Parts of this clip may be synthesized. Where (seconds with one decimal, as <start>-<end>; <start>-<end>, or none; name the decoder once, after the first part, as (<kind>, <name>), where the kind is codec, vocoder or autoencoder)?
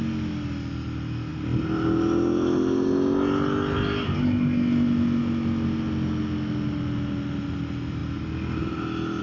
none